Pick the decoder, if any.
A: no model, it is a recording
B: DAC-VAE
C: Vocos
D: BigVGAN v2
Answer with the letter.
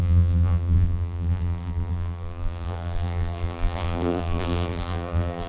D